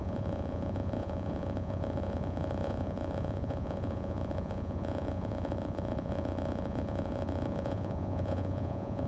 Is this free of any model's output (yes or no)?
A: no